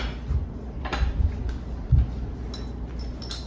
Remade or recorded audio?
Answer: recorded